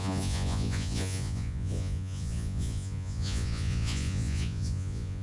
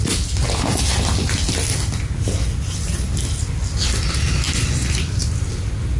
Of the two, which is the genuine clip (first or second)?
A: second